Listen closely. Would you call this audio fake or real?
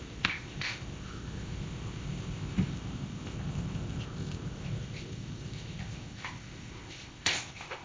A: fake